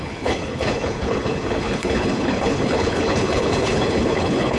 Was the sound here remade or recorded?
remade